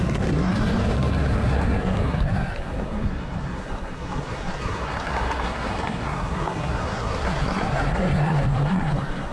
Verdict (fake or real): fake